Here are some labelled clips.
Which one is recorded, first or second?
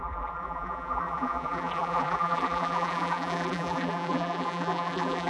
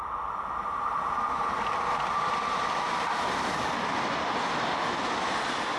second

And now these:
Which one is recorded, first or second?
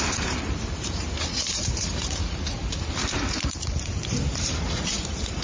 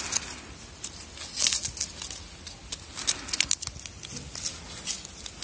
second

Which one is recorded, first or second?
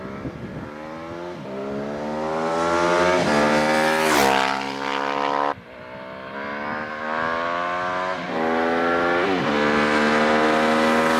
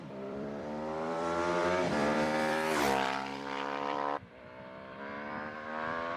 first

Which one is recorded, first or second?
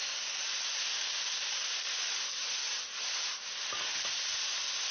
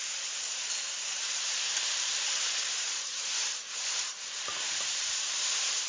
first